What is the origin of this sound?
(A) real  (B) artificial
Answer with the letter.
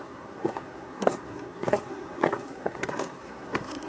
B